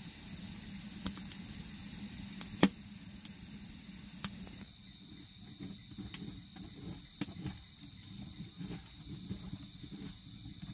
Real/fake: real